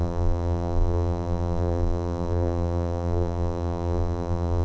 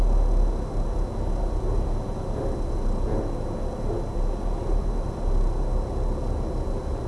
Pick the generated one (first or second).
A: first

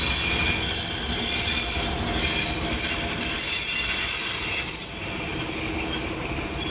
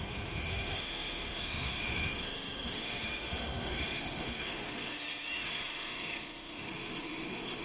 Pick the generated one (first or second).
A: second